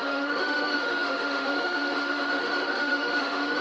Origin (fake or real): fake